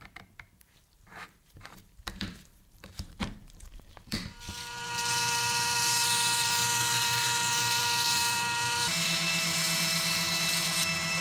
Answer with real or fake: fake